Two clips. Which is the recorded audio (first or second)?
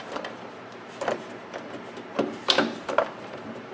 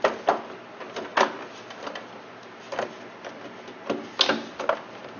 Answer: second